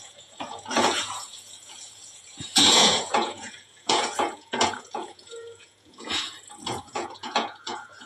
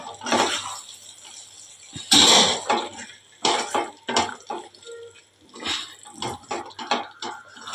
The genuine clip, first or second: second